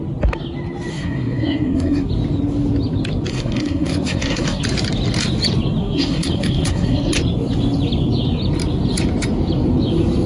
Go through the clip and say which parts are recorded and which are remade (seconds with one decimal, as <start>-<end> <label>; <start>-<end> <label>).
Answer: 0.0-0.9 recorded; 0.9-2.1 remade; 2.1-3.3 recorded; 3.3-4.6 remade; 4.6-5.8 recorded; 5.8-7.2 remade; 7.2-10.3 recorded